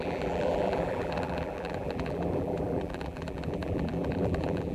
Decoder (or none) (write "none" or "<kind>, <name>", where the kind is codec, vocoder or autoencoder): vocoder, BigVGAN v2